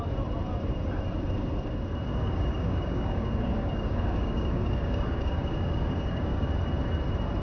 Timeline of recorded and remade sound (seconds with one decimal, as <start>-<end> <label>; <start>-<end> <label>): 0.0-2.1 recorded; 2.1-6.5 remade; 6.5-7.4 recorded

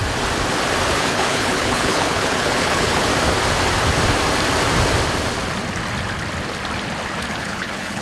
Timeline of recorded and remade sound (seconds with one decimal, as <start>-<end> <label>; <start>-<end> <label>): 0.0-0.9 recorded; 0.9-3.1 remade; 3.1-7.3 recorded; 7.3-8.0 remade

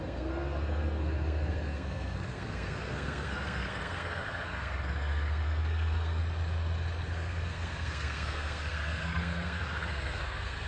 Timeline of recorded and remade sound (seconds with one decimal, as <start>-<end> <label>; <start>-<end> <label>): 0.0-6.2 remade; 6.2-7.1 recorded; 7.1-10.7 remade

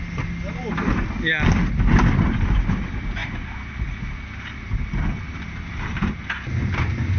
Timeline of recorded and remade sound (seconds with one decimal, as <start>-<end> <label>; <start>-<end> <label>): 0.0-7.2 recorded

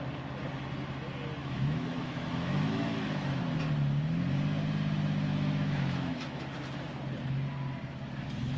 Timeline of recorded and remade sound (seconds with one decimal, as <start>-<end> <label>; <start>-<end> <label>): 0.0-1.4 recorded; 1.4-3.4 remade; 3.4-5.3 recorded; 5.3-6.4 remade; 6.4-8.6 recorded

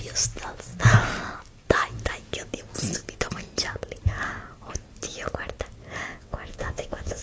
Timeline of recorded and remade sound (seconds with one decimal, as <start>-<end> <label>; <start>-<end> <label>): 0.0-6.1 recorded; 6.1-7.2 remade

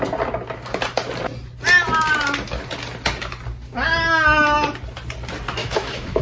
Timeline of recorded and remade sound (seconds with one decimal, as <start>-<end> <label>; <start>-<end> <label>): 0.0-5.6 recorded; 5.6-6.2 remade

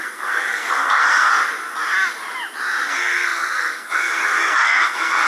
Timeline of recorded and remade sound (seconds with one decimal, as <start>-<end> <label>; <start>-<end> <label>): 0.0-1.3 remade; 1.3-2.9 recorded; 2.9-5.3 remade